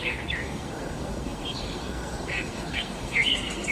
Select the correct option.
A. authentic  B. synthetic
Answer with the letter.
B